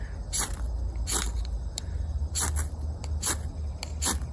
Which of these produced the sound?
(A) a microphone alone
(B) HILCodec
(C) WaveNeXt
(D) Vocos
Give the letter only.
A